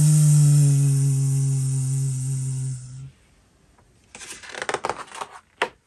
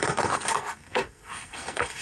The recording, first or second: first